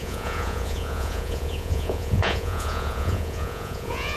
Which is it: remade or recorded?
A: remade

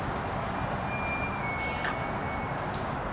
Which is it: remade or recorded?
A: recorded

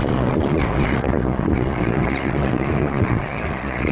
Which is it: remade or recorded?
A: remade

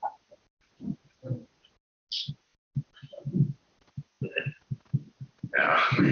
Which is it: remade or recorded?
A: recorded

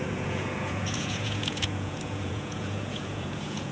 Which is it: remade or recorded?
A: remade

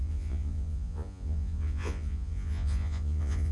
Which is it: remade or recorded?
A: remade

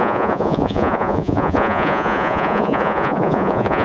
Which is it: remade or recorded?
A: remade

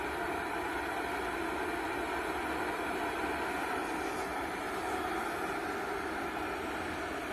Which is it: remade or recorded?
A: recorded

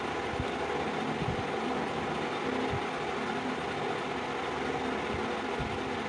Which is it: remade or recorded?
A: recorded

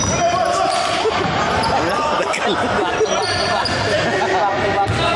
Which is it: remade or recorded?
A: recorded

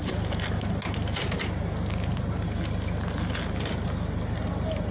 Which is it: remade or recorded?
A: recorded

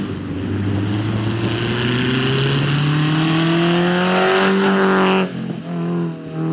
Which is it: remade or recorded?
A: recorded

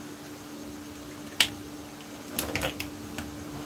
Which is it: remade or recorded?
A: recorded